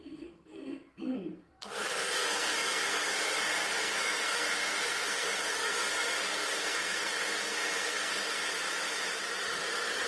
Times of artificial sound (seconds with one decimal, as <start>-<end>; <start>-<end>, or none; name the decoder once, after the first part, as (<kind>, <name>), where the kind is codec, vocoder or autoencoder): 0.0-8.4 (codec, SNAC)

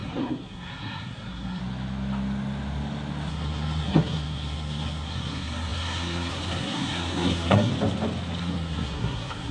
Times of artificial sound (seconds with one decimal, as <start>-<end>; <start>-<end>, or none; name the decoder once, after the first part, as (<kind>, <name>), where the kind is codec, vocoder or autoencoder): 0.0-1.6 (codec, SNAC); 3.3-7.7; 8.4-9.5

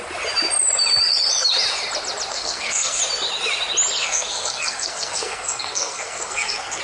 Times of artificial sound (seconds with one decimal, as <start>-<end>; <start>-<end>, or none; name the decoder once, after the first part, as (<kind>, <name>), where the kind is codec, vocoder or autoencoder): 2.3-3.0 (codec, SNAC); 4.0-6.8